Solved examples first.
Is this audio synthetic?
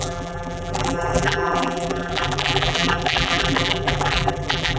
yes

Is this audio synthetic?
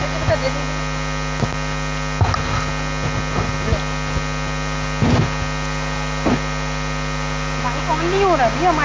no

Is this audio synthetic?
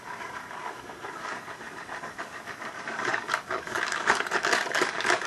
yes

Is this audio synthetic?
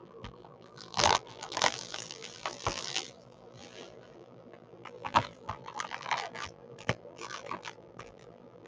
yes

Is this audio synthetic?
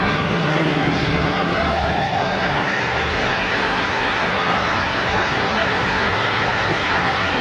yes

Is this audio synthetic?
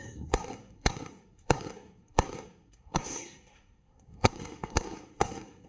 yes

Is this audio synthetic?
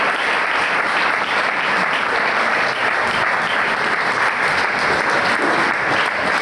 yes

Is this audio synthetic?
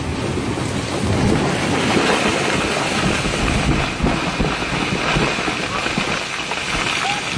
no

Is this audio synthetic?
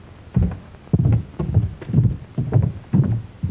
no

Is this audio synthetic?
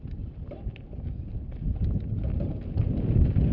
no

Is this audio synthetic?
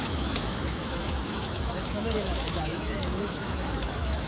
yes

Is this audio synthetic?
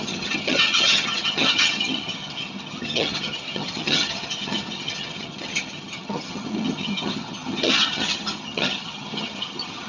yes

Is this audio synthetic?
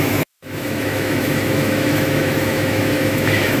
yes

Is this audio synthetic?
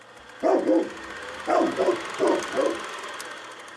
no